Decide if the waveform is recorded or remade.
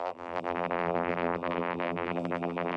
remade